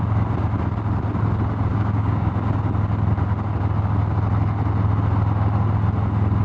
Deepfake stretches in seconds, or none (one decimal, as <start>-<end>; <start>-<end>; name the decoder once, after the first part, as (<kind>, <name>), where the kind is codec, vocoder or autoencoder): 1.7-2.3 (codec, DAC)